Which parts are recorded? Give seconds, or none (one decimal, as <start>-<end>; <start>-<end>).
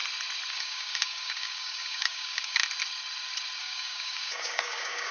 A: 0.0-0.5; 2.6-3.6